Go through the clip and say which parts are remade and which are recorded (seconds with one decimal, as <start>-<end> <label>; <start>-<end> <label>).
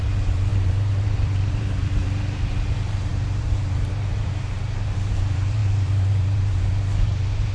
0.0-7.5 remade